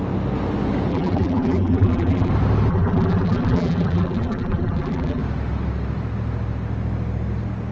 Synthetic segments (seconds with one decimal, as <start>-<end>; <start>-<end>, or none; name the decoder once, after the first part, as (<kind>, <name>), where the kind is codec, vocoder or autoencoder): 0.9-2.3 (vocoder, BigVGAN v2); 2.7-5.2